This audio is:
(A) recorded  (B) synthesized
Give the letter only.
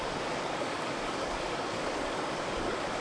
B